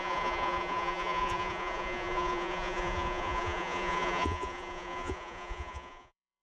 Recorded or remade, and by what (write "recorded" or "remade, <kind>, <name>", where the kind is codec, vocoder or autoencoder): remade, vocoder, Vocos